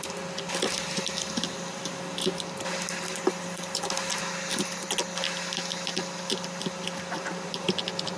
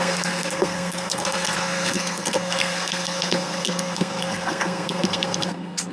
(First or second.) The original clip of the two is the first